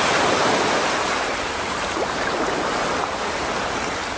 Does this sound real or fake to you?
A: real